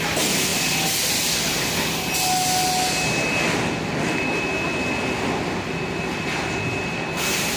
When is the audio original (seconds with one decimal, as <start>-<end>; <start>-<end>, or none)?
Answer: 0.0-7.6